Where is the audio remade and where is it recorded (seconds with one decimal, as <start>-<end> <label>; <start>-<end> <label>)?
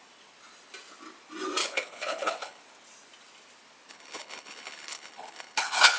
0.0-1.6 recorded; 1.6-2.6 remade; 2.6-3.9 recorded; 3.9-6.0 remade